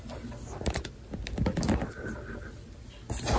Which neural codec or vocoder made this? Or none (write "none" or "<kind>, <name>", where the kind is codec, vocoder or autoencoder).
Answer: none